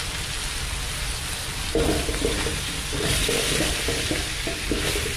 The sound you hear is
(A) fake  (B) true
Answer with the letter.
B